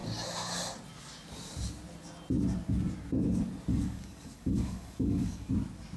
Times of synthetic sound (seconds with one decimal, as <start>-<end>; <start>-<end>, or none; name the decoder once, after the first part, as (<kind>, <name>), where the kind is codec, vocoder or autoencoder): 3.7-5.5 (codec, DAC)